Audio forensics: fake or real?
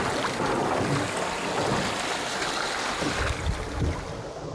real